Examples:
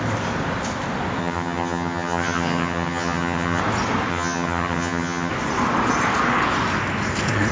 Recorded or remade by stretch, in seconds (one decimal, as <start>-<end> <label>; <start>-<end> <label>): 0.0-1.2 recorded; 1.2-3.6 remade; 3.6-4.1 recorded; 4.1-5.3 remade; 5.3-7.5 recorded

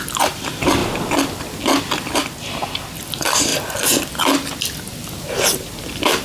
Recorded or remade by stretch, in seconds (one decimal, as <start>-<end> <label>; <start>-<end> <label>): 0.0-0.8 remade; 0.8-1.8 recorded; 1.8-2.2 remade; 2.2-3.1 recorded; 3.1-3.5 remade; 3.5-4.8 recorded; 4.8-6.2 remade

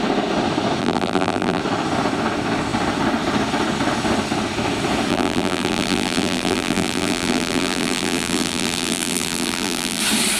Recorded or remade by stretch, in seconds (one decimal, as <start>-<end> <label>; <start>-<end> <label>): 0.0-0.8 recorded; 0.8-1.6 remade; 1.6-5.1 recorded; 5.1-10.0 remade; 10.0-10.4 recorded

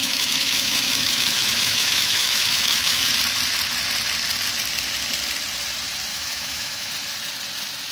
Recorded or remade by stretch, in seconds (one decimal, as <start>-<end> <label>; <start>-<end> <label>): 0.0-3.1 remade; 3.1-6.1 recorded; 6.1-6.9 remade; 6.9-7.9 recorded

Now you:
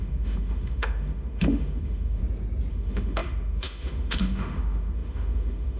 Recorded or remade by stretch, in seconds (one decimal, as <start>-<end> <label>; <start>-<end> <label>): 0.0-2.2 remade; 2.2-2.7 recorded; 2.7-5.8 remade

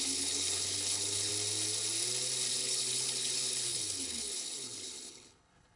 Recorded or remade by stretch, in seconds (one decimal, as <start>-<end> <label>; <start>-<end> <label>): 0.0-1.3 remade; 1.3-2.5 recorded; 2.5-5.8 remade

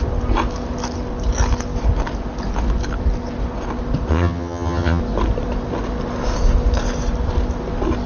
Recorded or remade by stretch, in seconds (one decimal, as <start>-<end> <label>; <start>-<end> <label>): 0.0-4.1 recorded; 4.1-5.0 remade; 5.0-8.1 recorded